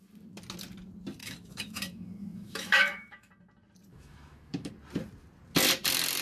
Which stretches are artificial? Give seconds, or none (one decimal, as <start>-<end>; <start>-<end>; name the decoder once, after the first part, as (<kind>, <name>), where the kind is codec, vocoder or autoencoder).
1.2-3.3 (autoencoder, DAC-VAE); 3.9-4.7